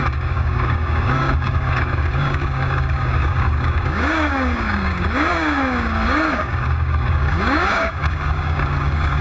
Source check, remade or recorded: remade